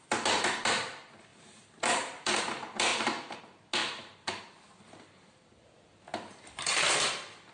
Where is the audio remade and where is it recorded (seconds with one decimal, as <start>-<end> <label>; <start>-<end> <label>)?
0.0-1.3 recorded; 1.3-2.3 remade; 2.3-2.9 recorded; 2.9-3.4 remade; 3.4-3.8 recorded; 3.8-4.4 remade; 4.4-6.1 recorded; 6.1-7.1 remade; 7.1-7.5 recorded